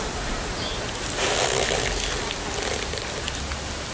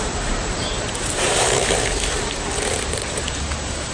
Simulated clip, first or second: second